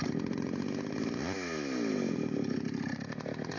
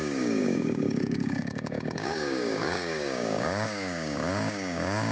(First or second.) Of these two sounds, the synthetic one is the second